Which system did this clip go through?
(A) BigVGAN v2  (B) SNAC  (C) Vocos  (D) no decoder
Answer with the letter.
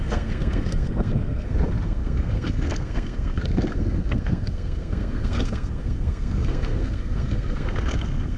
B